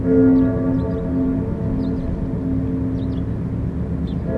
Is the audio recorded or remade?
recorded